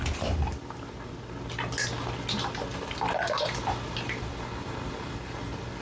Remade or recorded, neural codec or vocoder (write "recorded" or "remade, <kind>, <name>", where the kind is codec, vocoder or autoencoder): recorded